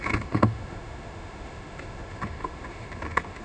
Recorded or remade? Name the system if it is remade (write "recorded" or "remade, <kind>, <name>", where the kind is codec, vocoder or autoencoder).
remade, autoencoder, DAC-VAE